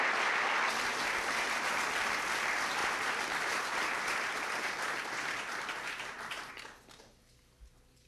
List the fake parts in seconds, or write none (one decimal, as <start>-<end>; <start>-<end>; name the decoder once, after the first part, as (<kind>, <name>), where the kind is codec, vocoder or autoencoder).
2.8-6.5 (vocoder, BigVGAN v2)